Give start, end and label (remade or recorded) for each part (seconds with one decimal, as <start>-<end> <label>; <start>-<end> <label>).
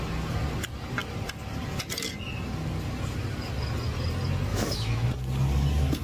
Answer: 0.0-4.5 recorded; 4.5-5.1 remade; 5.1-6.0 recorded